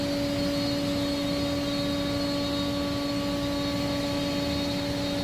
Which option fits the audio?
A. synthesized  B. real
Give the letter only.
B